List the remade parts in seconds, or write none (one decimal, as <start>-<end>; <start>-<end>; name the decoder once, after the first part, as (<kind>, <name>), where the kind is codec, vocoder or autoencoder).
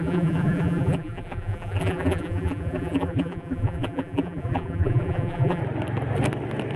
0.0-5.6 (vocoder, BigVGAN v2)